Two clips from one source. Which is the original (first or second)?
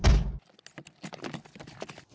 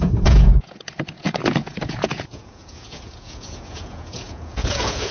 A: first